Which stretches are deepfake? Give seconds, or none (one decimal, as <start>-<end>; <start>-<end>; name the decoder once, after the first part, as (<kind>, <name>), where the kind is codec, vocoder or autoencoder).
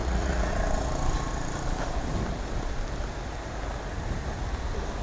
0.0-0.5 (vocoder, Vocos)